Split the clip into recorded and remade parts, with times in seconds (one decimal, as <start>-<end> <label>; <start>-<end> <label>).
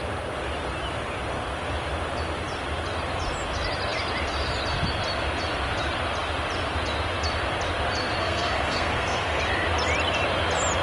0.0-8.2 recorded; 8.2-9.4 remade; 9.4-10.8 recorded